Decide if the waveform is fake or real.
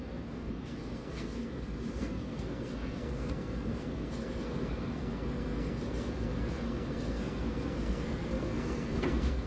fake